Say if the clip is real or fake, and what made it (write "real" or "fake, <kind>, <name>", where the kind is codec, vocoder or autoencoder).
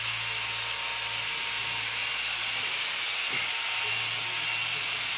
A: real